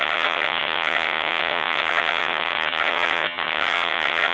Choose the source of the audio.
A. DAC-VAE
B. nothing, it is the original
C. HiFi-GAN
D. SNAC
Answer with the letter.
C